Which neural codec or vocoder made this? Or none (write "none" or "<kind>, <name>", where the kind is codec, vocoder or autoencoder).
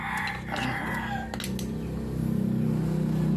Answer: none